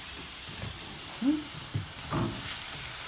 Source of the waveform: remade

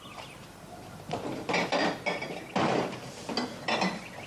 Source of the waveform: recorded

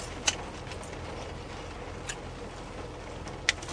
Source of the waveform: recorded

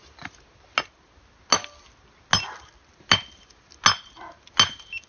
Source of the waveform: recorded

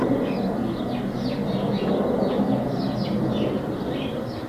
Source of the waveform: recorded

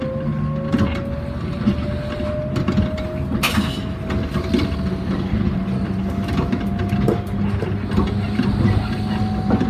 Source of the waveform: recorded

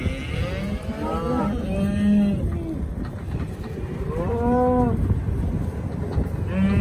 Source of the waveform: recorded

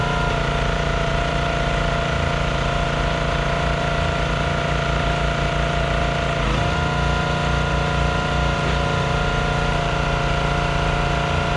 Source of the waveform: remade